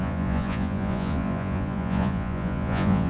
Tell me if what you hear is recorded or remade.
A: remade